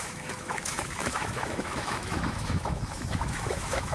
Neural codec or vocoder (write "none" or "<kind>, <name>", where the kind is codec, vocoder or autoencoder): autoencoder, DAC-VAE